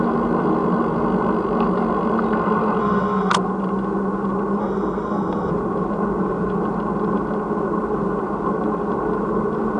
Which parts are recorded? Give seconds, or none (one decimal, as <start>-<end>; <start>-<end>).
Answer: 0.0-2.8; 3.3-4.6; 5.5-9.8

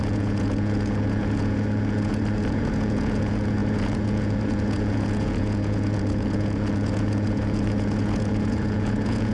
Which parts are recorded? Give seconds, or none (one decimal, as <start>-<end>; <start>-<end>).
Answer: none

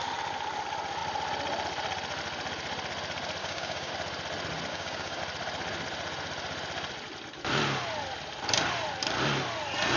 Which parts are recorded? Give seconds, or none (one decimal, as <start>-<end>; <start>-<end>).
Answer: 0.0-3.4; 3.9-4.7; 5.2-10.0

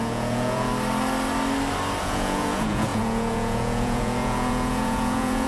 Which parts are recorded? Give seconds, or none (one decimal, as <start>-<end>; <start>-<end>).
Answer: 0.7-2.0